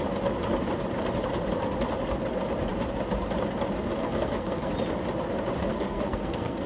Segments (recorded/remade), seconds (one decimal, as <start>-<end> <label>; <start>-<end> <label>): 0.0-4.0 recorded; 4.0-4.7 remade; 4.7-5.6 recorded; 5.6-6.7 remade